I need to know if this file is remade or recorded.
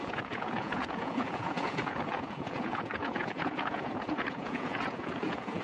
remade